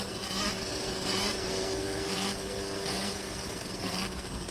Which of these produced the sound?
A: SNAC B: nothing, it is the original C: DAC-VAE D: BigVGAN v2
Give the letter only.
A